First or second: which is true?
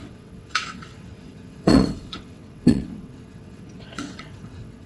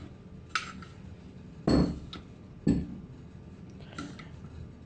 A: second